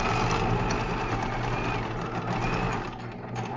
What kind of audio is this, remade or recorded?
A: recorded